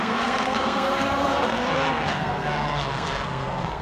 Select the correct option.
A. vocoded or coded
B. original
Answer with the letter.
A